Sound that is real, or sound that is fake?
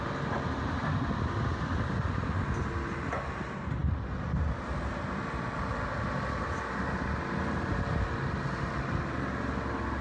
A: real